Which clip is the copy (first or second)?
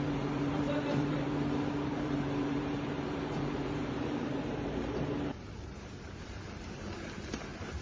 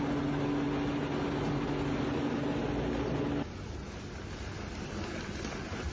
first